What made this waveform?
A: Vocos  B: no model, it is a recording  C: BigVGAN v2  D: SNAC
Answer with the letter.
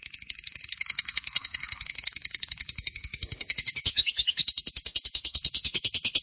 D